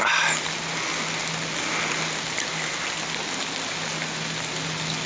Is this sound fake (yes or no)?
no